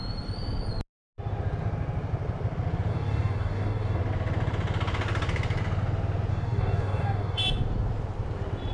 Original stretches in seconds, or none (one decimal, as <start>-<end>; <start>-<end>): 0.0-2.9; 4.0-6.3; 7.4-8.7